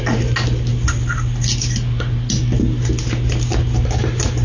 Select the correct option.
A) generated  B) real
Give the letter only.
B